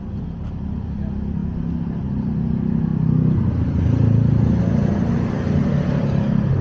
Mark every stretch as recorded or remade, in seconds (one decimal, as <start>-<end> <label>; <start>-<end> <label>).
0.0-6.6 recorded